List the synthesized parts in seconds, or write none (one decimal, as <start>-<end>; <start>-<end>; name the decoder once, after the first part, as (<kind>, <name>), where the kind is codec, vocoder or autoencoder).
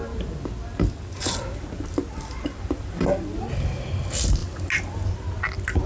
0.0-3.5 (vocoder, BigVGAN v2)